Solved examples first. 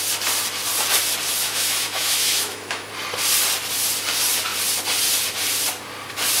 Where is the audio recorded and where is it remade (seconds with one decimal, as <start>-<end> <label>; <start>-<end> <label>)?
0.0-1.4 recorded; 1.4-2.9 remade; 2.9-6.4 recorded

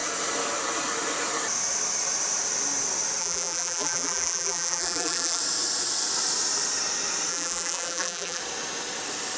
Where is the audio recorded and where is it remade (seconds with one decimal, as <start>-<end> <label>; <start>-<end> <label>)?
0.0-3.2 recorded; 3.2-5.4 remade; 5.4-7.3 recorded; 7.3-8.4 remade; 8.4-9.4 recorded

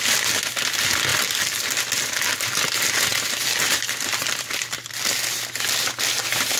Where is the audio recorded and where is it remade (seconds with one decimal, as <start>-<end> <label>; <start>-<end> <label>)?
0.0-1.1 recorded; 1.1-2.0 remade; 2.0-3.1 recorded; 3.1-6.1 remade; 6.1-6.6 recorded

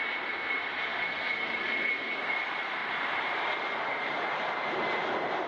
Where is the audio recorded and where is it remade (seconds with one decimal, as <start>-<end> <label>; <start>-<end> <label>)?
0.0-0.9 remade; 0.9-1.8 recorded; 1.8-5.5 remade